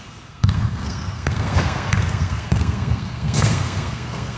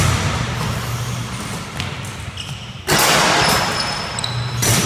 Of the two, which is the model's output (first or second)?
first